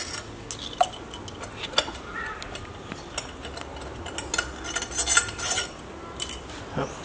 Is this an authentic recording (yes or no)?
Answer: yes